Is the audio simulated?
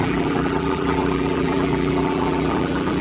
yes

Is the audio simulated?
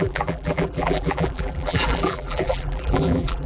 yes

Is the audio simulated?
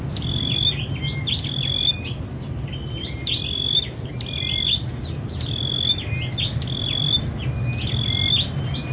no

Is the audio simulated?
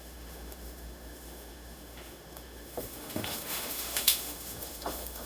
yes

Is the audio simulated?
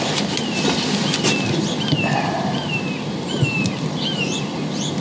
no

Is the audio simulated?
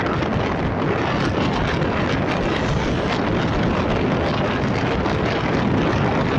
no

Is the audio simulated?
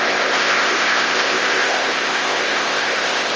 yes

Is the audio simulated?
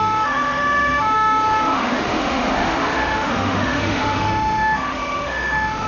yes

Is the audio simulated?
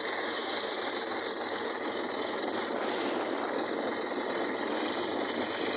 no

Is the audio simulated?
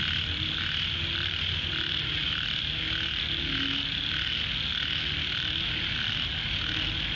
no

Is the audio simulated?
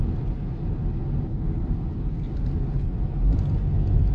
no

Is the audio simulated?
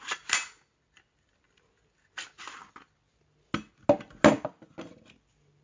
no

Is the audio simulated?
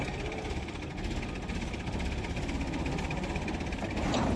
no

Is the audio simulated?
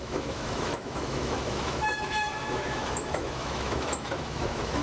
yes